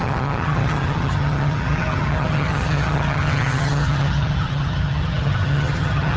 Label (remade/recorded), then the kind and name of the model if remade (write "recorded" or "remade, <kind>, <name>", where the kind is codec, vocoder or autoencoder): remade, vocoder, HiFi-GAN